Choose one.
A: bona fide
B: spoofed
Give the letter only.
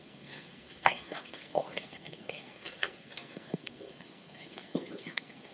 B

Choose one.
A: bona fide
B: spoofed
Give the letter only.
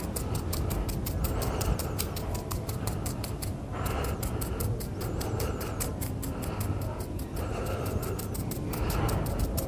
A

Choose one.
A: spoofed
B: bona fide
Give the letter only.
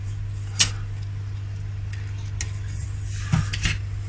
B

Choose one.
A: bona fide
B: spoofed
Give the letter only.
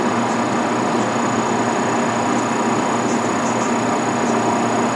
A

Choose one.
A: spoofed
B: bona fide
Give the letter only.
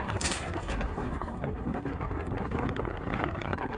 A